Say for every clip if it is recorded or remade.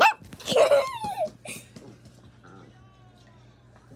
recorded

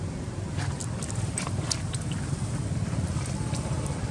recorded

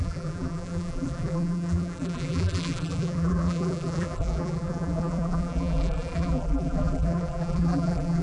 remade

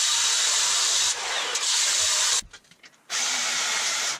remade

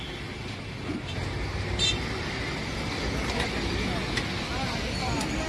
recorded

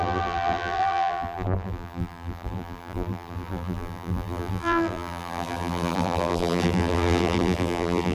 remade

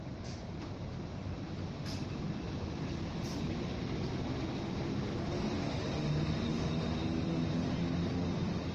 recorded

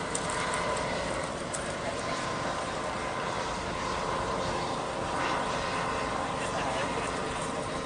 remade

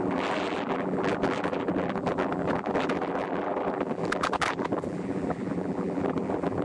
remade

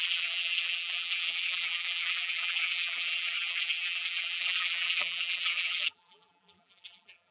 remade